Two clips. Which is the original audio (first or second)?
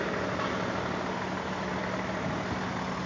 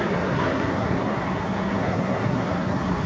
first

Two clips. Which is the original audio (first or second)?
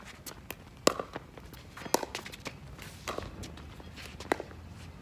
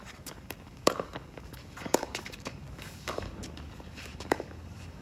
first